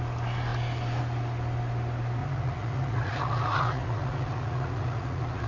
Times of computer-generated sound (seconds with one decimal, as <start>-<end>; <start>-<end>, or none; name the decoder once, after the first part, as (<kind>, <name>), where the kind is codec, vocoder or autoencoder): 2.2-5.5 (vocoder, Vocos)